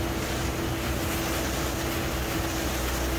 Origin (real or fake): real